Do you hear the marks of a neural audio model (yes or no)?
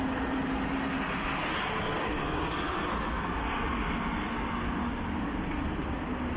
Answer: no